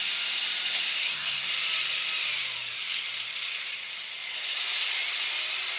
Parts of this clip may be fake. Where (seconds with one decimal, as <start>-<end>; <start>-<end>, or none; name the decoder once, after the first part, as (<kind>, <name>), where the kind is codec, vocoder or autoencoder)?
1.0-1.5 (codec, SNAC)